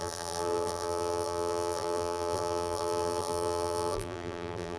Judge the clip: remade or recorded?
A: remade